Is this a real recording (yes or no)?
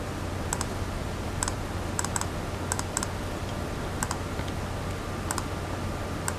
yes